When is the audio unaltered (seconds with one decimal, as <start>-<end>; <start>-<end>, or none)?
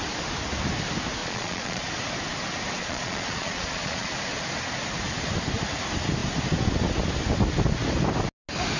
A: 0.0-1.2; 1.9-2.8; 4.1-8.8